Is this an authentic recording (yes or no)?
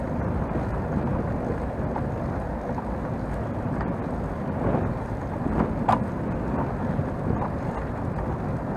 yes